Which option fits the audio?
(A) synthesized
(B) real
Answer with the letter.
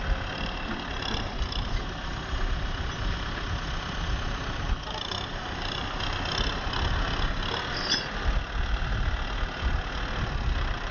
B